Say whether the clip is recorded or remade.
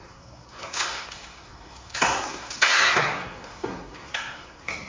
remade